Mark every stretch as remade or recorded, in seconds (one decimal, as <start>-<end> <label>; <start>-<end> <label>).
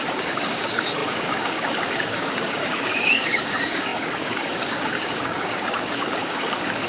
0.0-6.9 remade